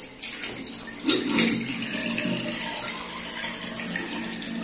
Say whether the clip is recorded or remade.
recorded